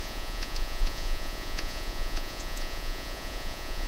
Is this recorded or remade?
remade